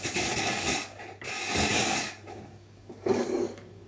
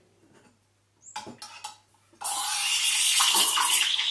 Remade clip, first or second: first